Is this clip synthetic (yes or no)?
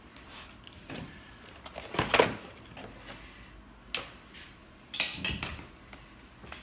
no